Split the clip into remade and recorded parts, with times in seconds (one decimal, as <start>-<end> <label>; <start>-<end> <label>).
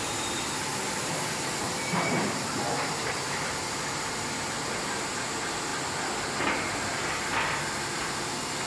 0.0-5.7 remade; 5.7-6.4 recorded; 6.4-8.7 remade